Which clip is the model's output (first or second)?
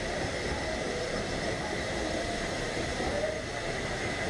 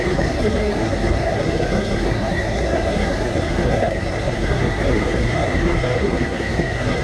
second